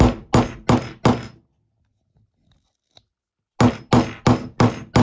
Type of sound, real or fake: real